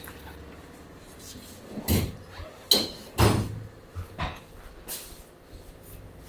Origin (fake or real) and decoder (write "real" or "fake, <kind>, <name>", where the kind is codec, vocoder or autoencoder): real